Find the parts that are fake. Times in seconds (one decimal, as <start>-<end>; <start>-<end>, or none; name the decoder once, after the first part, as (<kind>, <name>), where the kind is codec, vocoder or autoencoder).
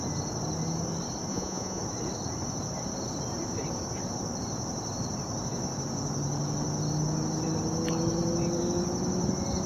1.3-1.8 (vocoder, Vocos)